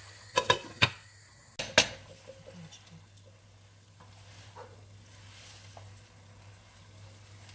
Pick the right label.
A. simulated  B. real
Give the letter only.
B